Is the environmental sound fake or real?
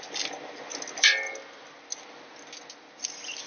real